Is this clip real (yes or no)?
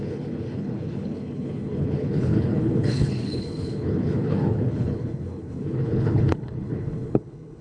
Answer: no